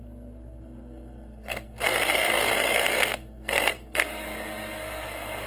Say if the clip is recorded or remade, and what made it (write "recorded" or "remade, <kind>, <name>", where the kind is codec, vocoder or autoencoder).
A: remade, codec, SNAC